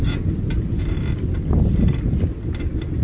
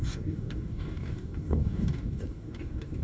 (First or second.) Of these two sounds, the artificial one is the second